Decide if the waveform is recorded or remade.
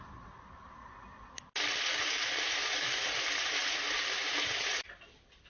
recorded